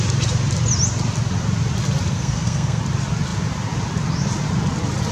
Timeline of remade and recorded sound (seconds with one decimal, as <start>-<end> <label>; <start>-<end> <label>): 0.0-2.1 recorded; 2.1-2.8 remade; 2.8-5.1 recorded